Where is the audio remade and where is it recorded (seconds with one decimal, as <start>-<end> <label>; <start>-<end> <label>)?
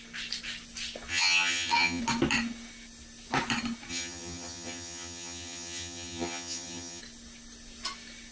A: 0.0-1.1 recorded; 1.1-2.0 remade; 2.0-3.9 recorded; 3.9-7.0 remade; 7.0-8.3 recorded